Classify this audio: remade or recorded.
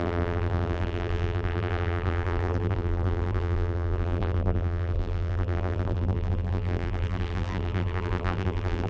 remade